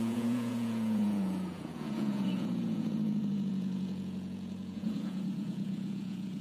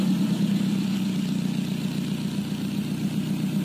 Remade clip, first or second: first